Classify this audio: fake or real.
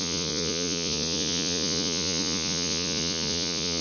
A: fake